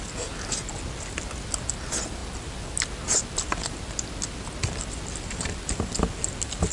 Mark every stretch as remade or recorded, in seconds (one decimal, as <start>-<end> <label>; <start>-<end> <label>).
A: 0.0-6.7 recorded